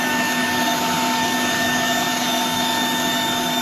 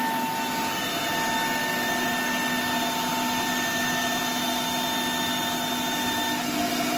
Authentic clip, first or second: second